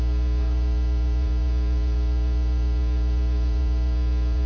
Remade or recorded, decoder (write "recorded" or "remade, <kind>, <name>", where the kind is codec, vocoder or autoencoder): remade, vocoder, Vocos